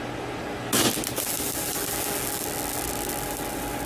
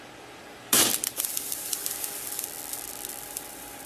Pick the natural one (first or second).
first